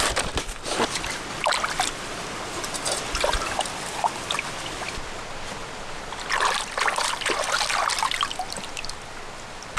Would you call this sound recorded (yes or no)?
yes